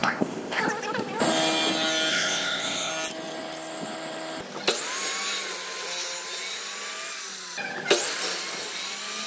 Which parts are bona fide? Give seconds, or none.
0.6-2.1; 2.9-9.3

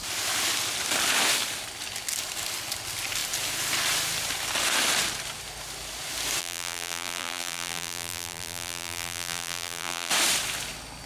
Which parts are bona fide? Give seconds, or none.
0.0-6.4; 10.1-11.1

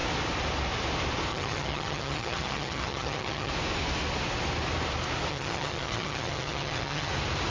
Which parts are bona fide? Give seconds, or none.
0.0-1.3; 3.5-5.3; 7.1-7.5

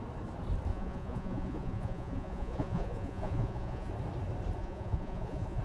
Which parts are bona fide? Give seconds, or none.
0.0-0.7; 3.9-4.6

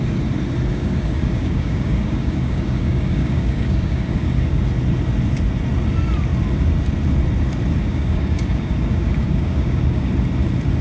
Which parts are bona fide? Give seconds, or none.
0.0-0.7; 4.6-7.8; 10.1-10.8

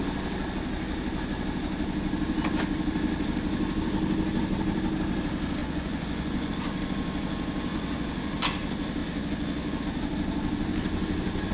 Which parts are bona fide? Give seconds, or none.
0.0-5.6; 6.5-7.7; 8.4-9.0; 9.8-11.5

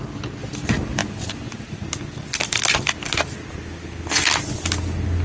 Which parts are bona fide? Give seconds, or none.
0.0-5.2